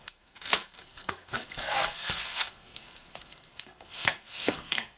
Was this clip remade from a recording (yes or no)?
yes